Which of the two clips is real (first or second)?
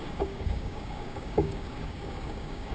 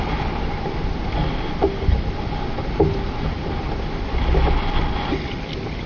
second